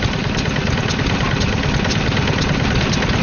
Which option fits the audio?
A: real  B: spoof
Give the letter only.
A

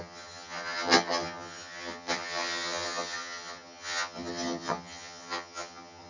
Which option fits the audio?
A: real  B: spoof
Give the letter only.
B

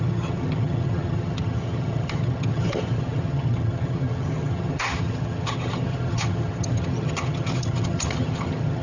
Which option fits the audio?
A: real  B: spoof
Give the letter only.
B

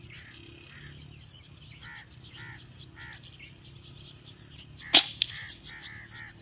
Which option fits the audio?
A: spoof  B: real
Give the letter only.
B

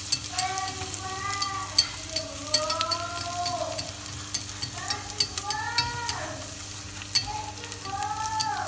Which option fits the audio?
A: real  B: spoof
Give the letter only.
A